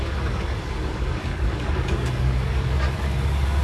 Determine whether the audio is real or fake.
fake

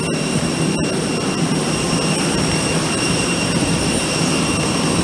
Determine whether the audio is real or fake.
real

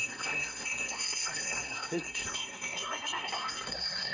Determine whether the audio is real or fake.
fake